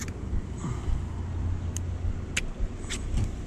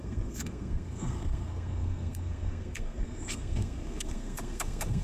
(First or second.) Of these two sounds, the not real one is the second